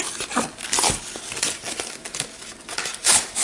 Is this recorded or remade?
recorded